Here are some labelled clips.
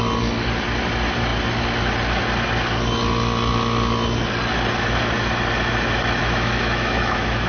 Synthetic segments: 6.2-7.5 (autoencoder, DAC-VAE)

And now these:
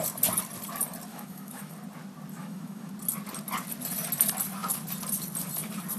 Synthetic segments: 1.1-1.7 (autoencoder, DAC-VAE); 2.3-2.9

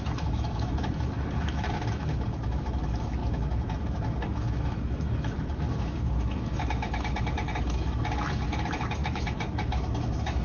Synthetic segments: 0.0-10.4 (autoencoder, DAC-VAE)

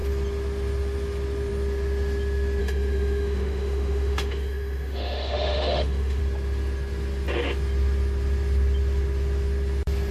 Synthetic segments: 2.6-6.2 (autoencoder, DAC-VAE)

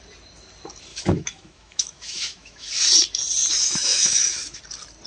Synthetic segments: 0.9-2.7 (autoencoder, DAC-VAE); 3.6-4.6

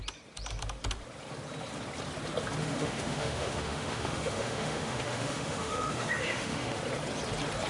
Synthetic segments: 2.6-6.8 (autoencoder, DAC-VAE)

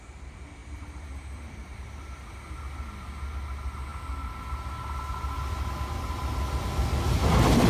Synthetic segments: none

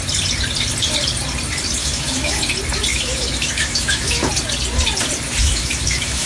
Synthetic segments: 1.8-2.4 (autoencoder, DAC-VAE); 2.9-4.3; 5.4-6.3